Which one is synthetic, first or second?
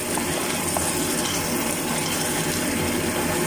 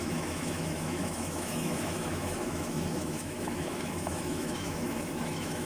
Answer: second